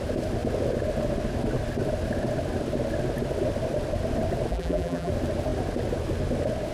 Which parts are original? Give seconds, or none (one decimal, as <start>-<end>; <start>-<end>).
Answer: 0.0-4.5; 5.1-6.7